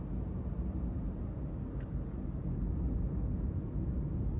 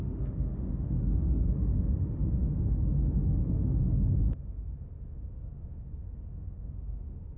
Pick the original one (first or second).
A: first